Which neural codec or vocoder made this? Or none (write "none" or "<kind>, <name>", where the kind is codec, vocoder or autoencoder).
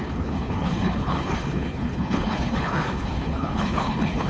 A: codec, HILCodec